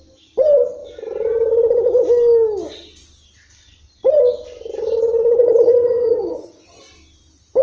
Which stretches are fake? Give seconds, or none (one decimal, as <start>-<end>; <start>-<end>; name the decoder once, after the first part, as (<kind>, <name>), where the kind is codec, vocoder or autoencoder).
5.4-6.8 (vocoder, HiFi-GAN)